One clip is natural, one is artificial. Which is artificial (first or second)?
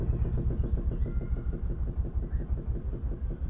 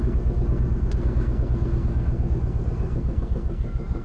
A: second